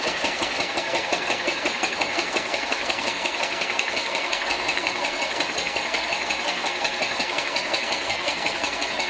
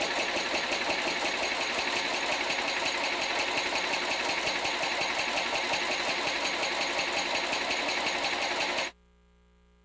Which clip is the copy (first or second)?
first